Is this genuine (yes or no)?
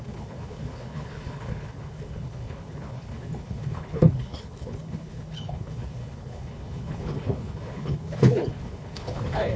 no